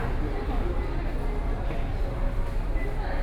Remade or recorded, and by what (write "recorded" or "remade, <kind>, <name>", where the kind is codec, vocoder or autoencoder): recorded